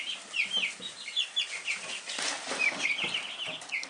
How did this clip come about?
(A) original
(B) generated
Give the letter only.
A